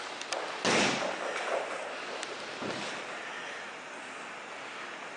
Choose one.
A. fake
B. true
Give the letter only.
B